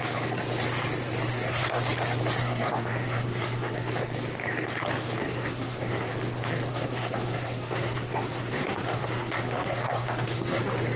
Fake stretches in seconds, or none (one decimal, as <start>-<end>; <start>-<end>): 1.3-1.8; 2.4-3.9; 5.2-6.1; 6.7-10.6